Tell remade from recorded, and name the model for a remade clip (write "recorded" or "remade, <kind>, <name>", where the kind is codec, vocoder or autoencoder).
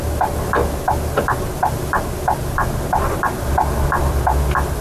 recorded